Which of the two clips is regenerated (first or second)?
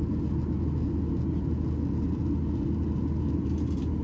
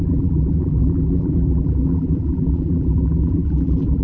second